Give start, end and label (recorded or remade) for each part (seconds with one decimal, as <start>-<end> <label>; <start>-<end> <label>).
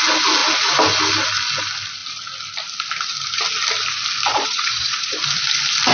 0.0-4.3 recorded; 4.3-5.2 remade; 5.2-5.9 recorded